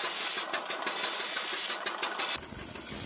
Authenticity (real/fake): real